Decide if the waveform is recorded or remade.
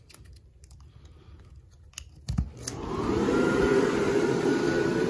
recorded